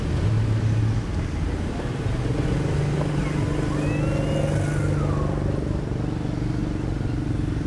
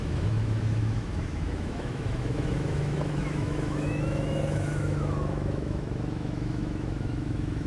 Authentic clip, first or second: first